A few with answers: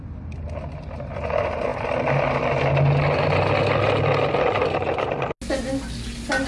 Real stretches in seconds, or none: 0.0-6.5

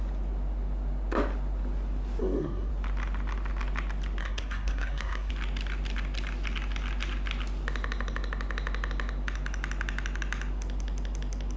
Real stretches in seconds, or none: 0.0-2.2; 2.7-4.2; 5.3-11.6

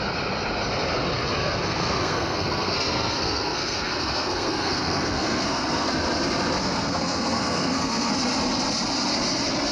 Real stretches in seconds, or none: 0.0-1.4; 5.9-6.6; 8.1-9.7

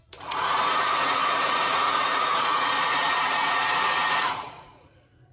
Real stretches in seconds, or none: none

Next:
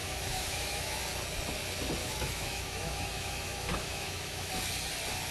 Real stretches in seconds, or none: 1.0-2.0; 4.5-5.3

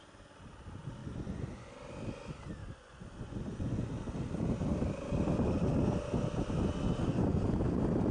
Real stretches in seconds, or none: 0.0-1.0; 1.7-2.6; 3.9-8.1

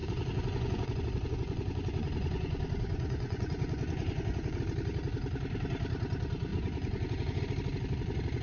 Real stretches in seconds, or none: 4.6-6.5; 7.4-8.4

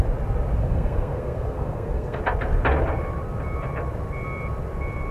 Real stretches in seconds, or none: 0.0-0.6; 2.2-5.1